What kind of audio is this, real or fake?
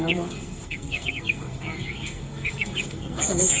fake